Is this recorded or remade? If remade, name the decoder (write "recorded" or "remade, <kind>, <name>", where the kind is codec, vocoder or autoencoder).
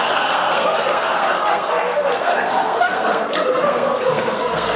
remade, codec, SNAC